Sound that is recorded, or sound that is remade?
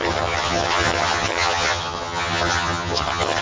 remade